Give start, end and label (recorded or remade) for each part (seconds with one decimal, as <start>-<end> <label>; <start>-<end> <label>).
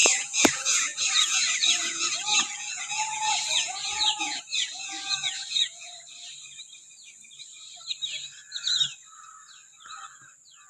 0.0-5.9 remade; 5.9-10.7 recorded